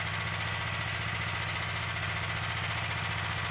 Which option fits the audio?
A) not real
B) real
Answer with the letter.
B